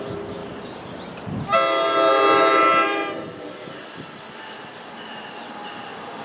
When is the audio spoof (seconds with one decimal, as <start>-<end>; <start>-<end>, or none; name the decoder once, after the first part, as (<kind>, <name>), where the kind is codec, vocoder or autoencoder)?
none